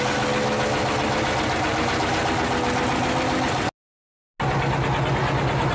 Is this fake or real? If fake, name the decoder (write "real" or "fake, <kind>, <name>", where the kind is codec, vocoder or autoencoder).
real